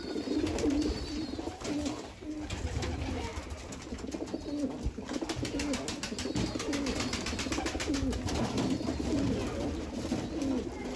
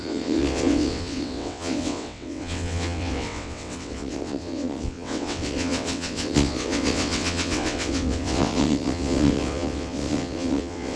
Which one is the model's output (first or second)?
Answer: second